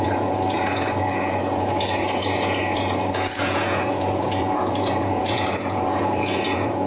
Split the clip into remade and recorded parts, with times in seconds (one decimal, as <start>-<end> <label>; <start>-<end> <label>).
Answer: 0.0-6.9 remade